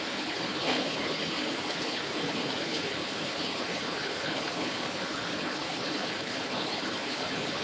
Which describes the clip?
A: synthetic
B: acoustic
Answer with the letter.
A